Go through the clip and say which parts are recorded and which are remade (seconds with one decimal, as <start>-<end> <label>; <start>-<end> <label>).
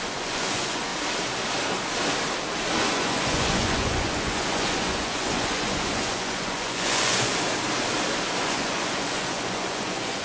0.0-0.9 remade; 0.9-2.8 recorded; 2.8-7.3 remade; 7.3-8.4 recorded; 8.4-10.2 remade